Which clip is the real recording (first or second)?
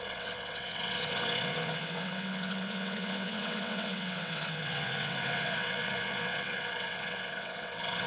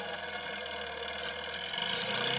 second